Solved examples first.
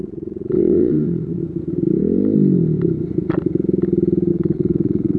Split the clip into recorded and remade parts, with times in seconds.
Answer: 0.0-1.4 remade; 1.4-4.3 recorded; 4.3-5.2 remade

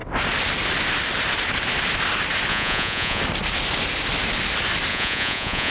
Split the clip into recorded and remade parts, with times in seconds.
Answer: 0.0-2.5 recorded; 2.5-3.2 remade; 3.2-4.9 recorded; 4.9-5.7 remade

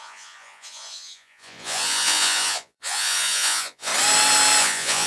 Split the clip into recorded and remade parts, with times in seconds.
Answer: 0.0-3.9 remade; 3.9-4.6 recorded; 4.6-5.1 remade

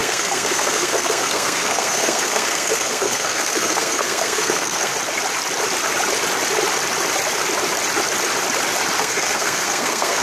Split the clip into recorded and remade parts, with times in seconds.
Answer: 0.0-4.9 remade; 4.9-9.0 recorded; 9.0-10.2 remade

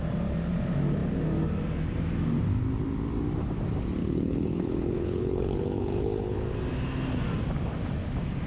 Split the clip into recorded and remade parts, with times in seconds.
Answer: 0.0-4.0 recorded; 4.0-6.4 remade; 6.4-8.5 recorded

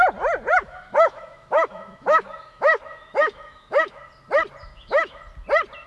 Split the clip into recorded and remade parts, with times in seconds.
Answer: 0.0-0.5 recorded; 0.5-4.0 remade; 4.0-4.6 recorded; 4.6-5.2 remade; 5.2-5.9 recorded

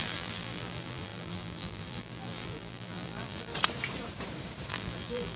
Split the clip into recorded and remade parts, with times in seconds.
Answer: 0.0-3.5 remade; 3.5-4.7 recorded; 4.7-5.4 remade

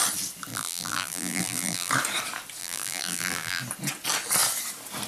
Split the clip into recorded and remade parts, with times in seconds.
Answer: 0.0-0.5 recorded; 0.5-1.9 remade; 1.9-2.6 recorded; 2.6-3.6 remade; 3.6-5.1 recorded